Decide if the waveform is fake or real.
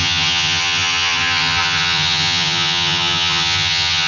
fake